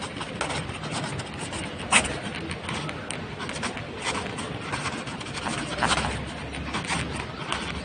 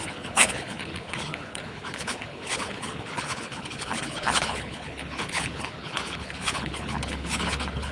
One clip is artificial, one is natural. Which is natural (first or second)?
first